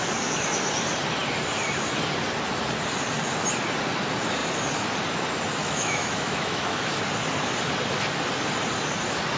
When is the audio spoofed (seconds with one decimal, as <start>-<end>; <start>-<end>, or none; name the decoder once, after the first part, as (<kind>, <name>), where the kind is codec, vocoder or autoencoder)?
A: 5.6-7.0 (autoencoder, DAC-VAE)